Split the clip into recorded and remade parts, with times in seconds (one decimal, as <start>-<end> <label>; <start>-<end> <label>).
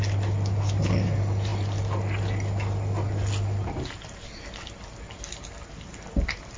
0.0-6.6 recorded